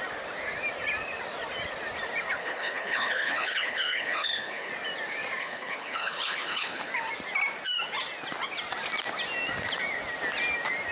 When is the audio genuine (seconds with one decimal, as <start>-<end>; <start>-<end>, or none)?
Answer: 0.0-2.4; 4.7-5.4; 6.9-10.9